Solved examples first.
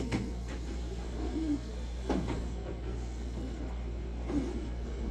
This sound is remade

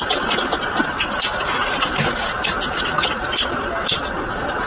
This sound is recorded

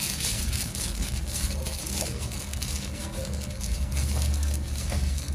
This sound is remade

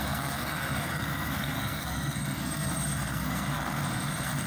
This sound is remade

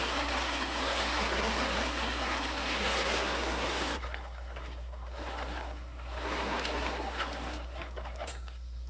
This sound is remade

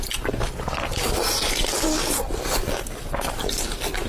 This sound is recorded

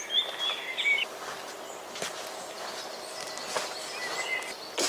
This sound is recorded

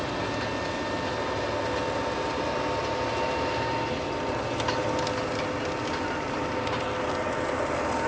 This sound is recorded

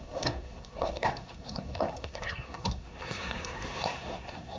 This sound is remade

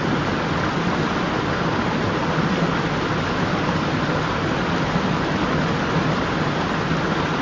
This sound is recorded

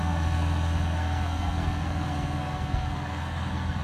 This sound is remade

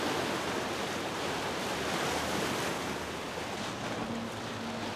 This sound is recorded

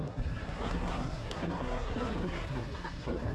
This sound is remade